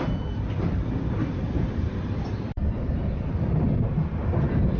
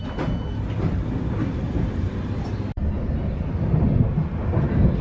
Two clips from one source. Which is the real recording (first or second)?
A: second